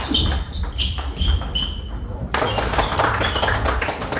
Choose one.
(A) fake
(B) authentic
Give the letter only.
A